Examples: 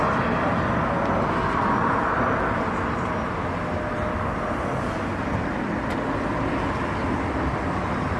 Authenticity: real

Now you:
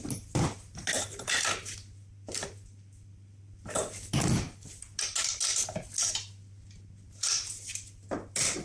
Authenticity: real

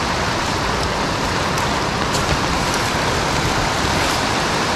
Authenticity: real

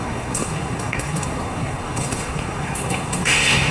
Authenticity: fake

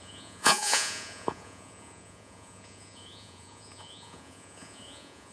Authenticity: fake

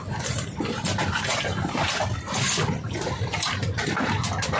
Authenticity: real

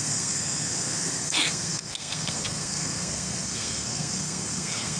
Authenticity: fake